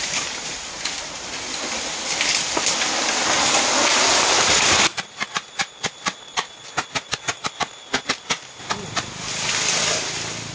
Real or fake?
fake